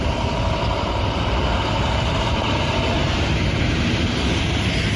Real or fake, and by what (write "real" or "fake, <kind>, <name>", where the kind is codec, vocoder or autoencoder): fake, vocoder, BigVGAN v2